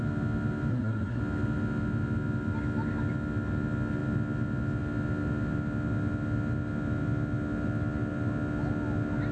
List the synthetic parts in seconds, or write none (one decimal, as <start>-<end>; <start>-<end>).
0.7-1.2